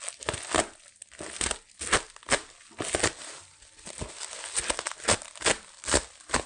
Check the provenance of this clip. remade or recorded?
recorded